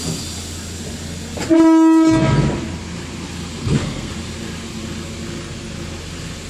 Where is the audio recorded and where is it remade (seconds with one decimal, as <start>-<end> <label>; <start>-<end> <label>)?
0.0-3.6 recorded; 3.6-4.1 remade; 4.1-6.5 recorded